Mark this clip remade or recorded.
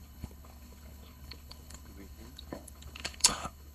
remade